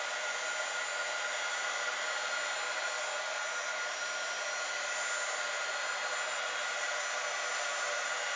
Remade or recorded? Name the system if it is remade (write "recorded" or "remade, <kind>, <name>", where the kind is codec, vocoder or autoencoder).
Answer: recorded